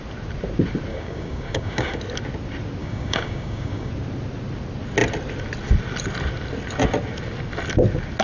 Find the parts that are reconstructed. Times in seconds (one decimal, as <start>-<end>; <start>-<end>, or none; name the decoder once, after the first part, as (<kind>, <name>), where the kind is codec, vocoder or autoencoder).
0.9-2.0 (codec, DAC); 2.8-3.9